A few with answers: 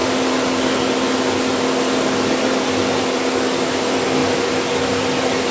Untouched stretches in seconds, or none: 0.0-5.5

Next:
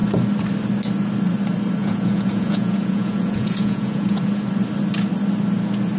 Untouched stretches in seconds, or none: 0.0-1.8; 4.2-6.0

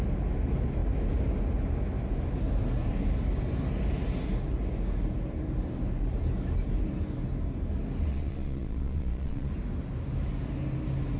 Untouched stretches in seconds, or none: 0.0-8.1; 9.5-11.2

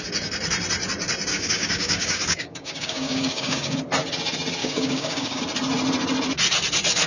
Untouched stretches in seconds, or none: 0.0-1.3; 3.8-4.6; 5.4-7.1

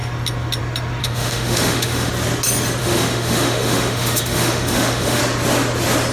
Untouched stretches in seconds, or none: 0.0-1.0; 2.1-2.8; 5.2-6.1